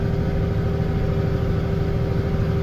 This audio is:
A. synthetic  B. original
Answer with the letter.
B